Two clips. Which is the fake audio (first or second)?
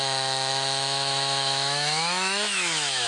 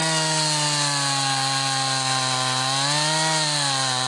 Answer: first